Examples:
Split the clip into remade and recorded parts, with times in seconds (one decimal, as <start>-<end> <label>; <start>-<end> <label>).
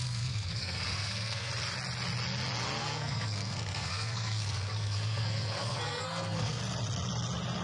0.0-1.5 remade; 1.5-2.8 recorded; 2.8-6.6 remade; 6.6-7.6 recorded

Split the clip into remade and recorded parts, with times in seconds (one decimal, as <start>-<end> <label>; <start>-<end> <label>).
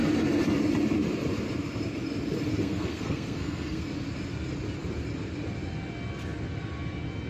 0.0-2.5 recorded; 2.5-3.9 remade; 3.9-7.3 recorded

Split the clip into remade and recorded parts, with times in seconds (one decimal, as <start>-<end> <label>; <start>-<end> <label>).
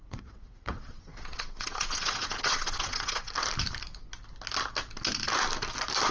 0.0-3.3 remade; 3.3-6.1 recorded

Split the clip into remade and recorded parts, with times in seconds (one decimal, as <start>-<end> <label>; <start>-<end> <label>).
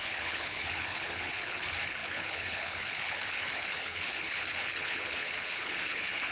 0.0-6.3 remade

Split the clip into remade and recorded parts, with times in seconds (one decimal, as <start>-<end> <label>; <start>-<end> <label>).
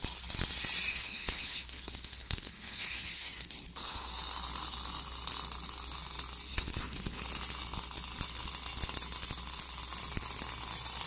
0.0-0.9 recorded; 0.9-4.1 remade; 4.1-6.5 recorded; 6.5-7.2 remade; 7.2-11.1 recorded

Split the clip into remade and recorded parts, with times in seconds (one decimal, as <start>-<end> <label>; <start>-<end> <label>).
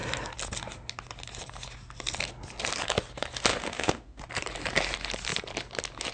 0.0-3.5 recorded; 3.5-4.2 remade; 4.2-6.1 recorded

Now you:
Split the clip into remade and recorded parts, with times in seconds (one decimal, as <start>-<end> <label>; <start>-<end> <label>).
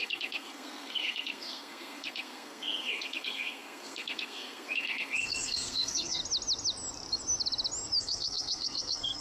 0.0-6.2 remade; 6.2-8.0 recorded; 8.0-9.2 remade